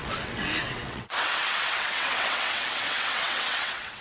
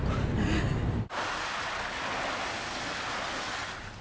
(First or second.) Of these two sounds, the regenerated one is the first